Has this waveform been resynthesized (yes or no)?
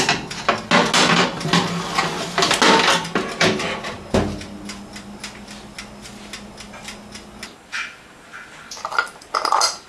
no